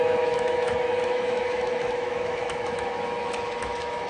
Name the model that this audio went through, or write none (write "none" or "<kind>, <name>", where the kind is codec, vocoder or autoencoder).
autoencoder, DAC-VAE